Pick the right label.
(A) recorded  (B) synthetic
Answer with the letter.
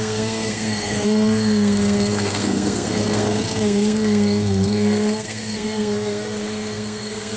B